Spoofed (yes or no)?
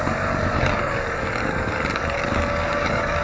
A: yes